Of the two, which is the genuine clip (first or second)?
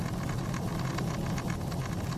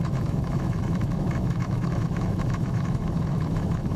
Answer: first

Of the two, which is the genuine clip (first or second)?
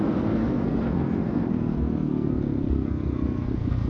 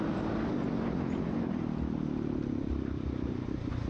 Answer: second